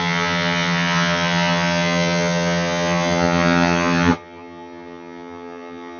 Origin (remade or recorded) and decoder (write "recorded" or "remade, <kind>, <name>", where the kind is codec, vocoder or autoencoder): remade, vocoder, HiFi-GAN